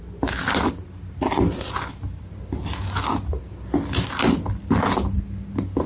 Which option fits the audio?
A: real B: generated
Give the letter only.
A